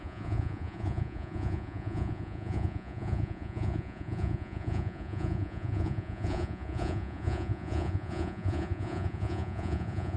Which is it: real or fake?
fake